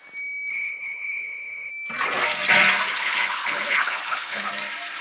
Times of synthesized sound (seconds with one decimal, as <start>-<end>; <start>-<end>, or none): 0.5-1.7; 3.0-4.5